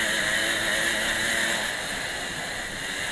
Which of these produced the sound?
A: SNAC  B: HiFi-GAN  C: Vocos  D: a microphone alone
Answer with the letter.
D